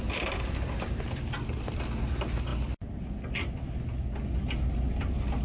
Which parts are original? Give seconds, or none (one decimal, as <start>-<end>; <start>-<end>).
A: 0.0-5.4